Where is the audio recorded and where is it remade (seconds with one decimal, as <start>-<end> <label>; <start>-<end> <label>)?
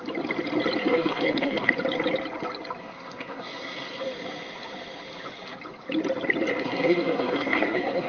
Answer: 0.0-0.8 recorded; 0.8-1.7 remade; 1.7-2.8 recorded; 2.8-4.0 remade; 4.0-6.5 recorded; 6.5-8.1 remade